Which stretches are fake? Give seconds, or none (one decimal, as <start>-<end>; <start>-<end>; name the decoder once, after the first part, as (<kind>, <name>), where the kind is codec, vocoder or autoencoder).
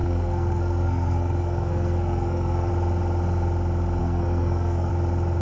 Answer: 0.0-2.7 (codec, SNAC); 4.0-4.9